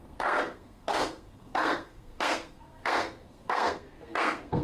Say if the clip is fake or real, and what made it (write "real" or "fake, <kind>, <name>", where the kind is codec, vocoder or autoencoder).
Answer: fake, codec, SNAC